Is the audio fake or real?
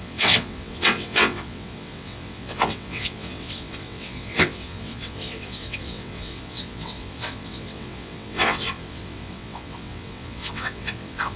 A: fake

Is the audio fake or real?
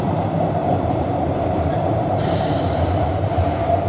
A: fake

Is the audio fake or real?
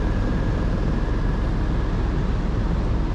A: real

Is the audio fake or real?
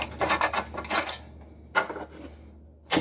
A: real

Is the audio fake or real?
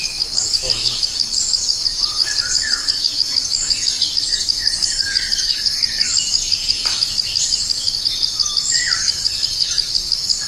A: fake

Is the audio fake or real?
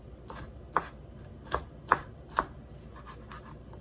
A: real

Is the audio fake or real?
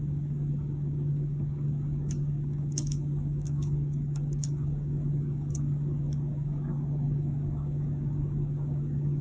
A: fake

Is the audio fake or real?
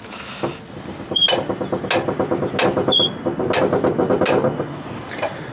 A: real